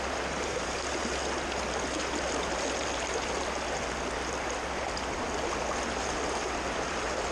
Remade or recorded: recorded